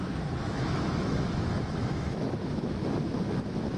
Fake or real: fake